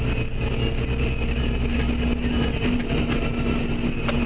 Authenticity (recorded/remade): recorded